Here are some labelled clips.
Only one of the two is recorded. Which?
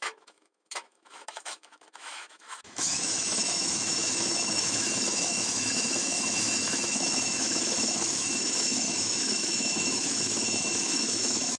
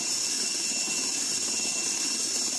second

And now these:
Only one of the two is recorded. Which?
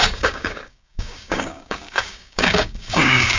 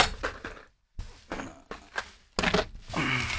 second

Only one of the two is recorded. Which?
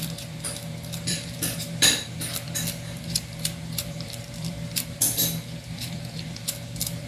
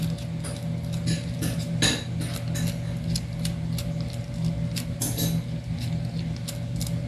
second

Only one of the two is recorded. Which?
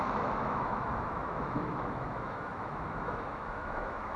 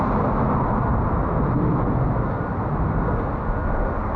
second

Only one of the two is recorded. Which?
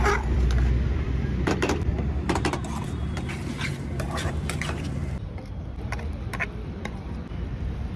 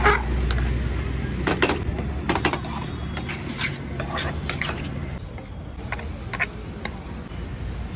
second